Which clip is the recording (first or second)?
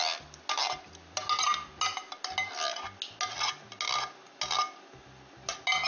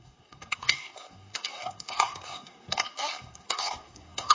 first